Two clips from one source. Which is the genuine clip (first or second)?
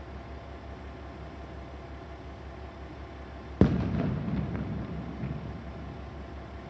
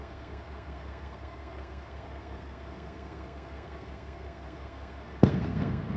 first